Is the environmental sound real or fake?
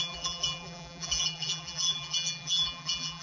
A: fake